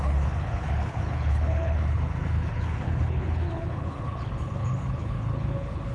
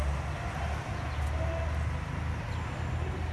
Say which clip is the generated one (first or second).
first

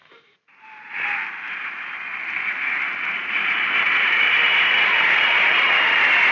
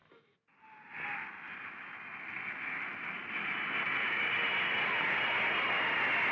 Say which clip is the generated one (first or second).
first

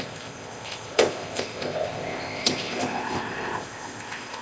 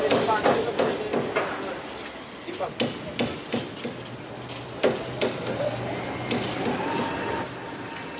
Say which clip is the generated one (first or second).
first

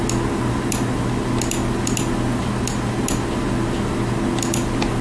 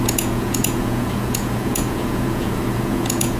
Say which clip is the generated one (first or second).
second